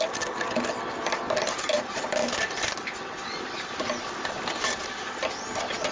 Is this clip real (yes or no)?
yes